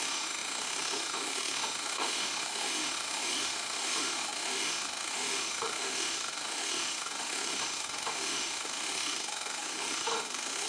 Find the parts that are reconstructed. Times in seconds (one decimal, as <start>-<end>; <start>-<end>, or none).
0.0-10.7